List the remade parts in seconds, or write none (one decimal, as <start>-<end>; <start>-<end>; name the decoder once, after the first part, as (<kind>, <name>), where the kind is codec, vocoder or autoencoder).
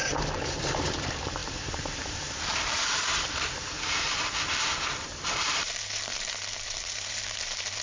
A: 0.0-7.8 (vocoder, BigVGAN v2)